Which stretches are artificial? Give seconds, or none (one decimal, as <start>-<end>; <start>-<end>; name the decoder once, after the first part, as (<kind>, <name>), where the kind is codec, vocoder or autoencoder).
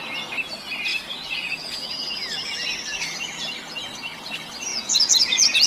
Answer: 0.9-2.2 (vocoder, Vocos); 4.7-5.7